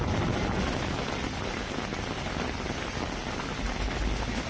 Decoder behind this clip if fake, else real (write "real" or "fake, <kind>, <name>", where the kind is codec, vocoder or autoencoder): real